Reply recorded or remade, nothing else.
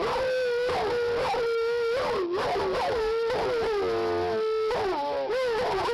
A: recorded